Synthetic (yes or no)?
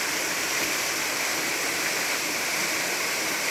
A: yes